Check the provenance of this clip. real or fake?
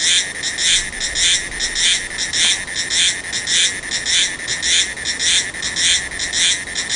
real